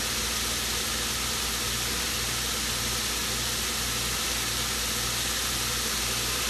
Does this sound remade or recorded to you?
recorded